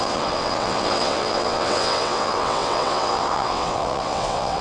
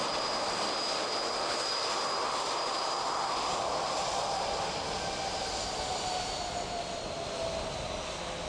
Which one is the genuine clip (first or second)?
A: second